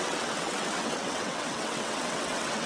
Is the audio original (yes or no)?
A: no